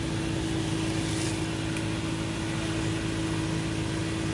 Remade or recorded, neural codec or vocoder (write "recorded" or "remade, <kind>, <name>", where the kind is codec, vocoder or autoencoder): recorded